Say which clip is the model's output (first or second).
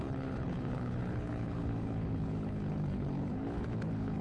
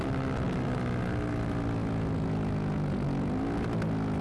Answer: first